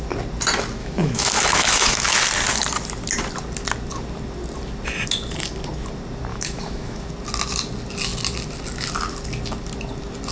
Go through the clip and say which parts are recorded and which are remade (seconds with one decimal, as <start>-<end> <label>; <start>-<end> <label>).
0.0-0.8 recorded; 0.8-2.2 remade; 2.2-6.3 recorded; 6.3-7.1 remade; 7.1-10.3 recorded